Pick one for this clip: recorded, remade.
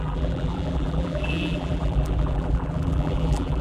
remade